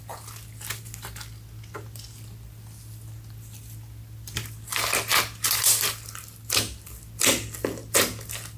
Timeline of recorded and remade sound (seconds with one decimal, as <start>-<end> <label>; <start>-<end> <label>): 0.0-8.6 recorded